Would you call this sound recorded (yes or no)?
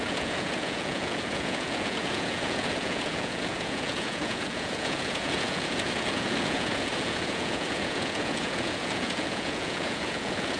no